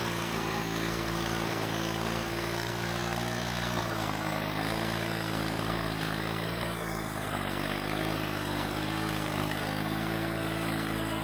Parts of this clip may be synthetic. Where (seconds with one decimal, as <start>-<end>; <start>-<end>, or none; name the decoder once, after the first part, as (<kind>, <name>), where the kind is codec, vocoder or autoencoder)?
0.0-11.2 (codec, SNAC)